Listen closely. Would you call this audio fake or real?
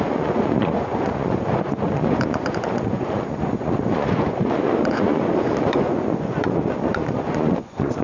fake